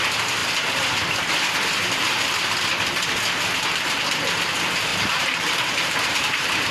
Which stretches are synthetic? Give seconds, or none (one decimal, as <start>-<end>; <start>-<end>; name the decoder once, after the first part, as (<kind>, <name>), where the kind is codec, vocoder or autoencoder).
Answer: 4.9-6.7 (vocoder, BigVGAN v2)